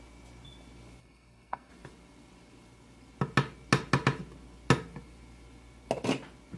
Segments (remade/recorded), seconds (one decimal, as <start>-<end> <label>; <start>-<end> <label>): 0.0-1.0 recorded; 1.0-1.7 remade; 1.7-6.6 recorded